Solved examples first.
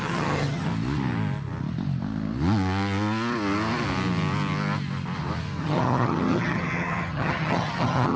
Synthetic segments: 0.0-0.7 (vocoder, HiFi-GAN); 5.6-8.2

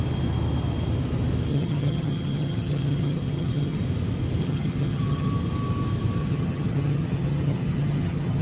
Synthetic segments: 1.5-3.8 (vocoder, HiFi-GAN); 4.4-5.3; 6.2-8.4

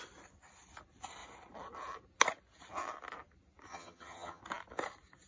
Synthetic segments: 3.7-4.4 (vocoder, HiFi-GAN)

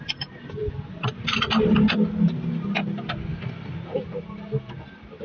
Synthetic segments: none